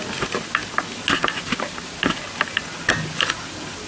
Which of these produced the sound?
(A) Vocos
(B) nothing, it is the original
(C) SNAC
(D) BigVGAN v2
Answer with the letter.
B